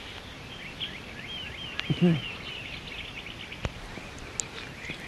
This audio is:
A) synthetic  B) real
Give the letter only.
B